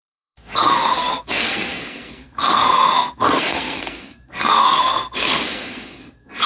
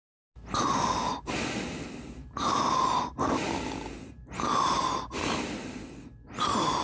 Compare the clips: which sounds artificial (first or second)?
first